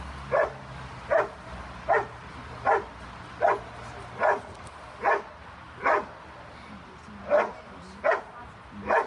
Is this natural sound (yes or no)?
yes